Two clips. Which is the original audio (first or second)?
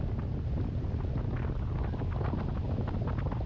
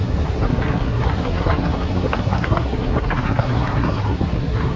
first